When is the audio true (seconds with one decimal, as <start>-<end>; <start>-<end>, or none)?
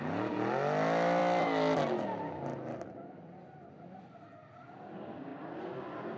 0.0-6.2